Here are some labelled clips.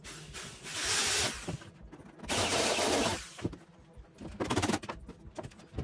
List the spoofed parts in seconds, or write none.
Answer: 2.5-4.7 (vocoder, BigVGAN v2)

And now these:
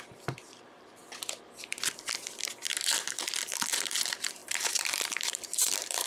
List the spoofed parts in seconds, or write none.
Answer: 0.0-1.0 (vocoder, BigVGAN v2); 2.7-6.1

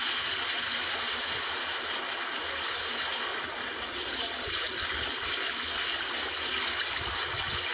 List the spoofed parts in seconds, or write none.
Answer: none

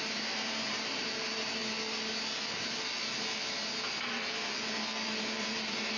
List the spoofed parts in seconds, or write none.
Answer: 0.0-1.6 (vocoder, BigVGAN v2); 5.2-6.0

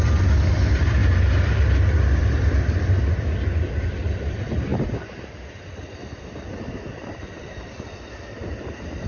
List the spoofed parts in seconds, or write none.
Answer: 0.0-4.7 (vocoder, BigVGAN v2); 6.7-9.1